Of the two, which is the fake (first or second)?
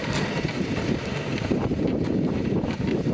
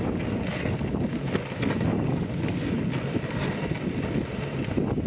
first